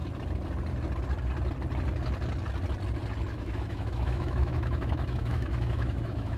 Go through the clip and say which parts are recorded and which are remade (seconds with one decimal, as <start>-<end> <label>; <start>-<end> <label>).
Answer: 0.0-3.3 recorded; 3.3-6.4 remade